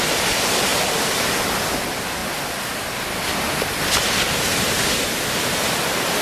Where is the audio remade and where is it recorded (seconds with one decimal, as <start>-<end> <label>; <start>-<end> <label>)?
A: 0.0-6.2 recorded